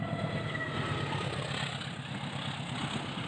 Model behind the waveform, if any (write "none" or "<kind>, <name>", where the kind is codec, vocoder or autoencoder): none